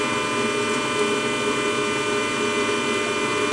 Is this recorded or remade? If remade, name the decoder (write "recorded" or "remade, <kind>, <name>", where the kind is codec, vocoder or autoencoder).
recorded